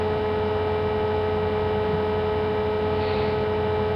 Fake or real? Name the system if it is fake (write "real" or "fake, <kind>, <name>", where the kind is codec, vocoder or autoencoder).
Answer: real